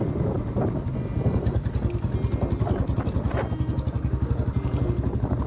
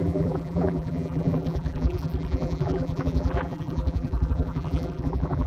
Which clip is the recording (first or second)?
first